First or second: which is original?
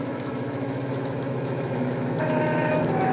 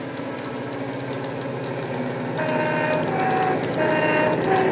second